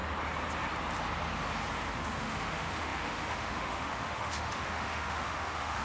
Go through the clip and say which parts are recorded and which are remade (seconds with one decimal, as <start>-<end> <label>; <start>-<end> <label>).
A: 0.0-1.9 recorded; 1.9-5.8 remade